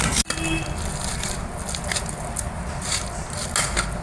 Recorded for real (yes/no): yes